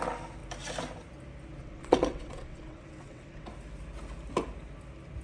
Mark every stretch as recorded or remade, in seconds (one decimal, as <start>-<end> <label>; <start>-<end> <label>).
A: 0.0-1.6 recorded; 1.6-3.5 remade; 3.5-5.2 recorded

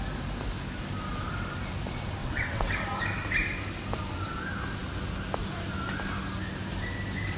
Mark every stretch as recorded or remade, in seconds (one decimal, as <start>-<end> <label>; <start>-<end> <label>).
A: 0.0-2.2 recorded; 2.2-2.7 remade; 2.7-7.4 recorded

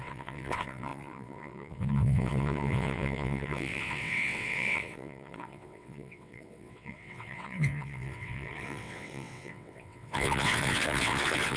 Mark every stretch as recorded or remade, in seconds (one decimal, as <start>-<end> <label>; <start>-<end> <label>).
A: 0.0-11.6 remade

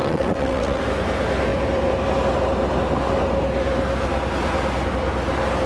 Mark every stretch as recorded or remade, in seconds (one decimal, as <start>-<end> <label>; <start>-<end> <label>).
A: 0.0-0.8 remade; 0.8-5.7 recorded

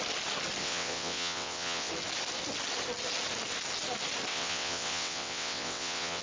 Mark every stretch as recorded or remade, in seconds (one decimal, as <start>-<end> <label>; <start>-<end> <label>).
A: 0.0-0.6 recorded; 0.6-1.9 remade; 1.9-4.3 recorded; 4.3-6.2 remade

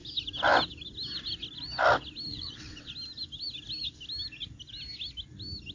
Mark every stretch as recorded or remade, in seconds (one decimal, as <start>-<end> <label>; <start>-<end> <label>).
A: 0.0-2.3 recorded; 2.3-2.9 remade; 2.9-5.7 recorded

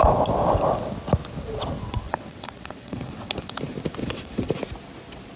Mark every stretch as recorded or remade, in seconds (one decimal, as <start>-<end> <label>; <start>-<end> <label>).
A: 0.0-1.8 recorded; 1.8-3.6 remade; 3.6-4.0 recorded; 4.0-4.5 remade; 4.5-5.4 recorded

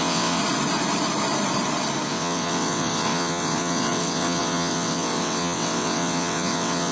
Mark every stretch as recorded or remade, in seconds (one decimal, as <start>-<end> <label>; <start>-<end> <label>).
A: 0.0-0.4 remade; 0.4-2.1 recorded; 2.1-6.9 remade